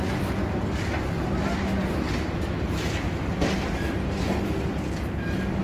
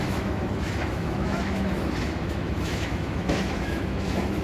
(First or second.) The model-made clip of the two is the second